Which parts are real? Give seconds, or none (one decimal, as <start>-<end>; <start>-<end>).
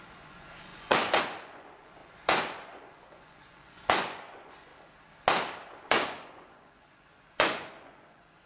4.7-5.9